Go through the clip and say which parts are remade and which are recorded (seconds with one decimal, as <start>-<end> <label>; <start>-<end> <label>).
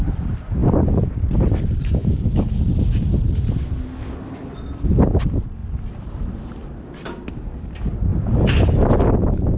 0.0-9.6 recorded